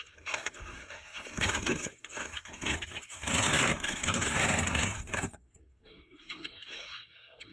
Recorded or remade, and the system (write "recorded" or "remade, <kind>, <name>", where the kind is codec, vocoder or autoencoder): remade, codec, SNAC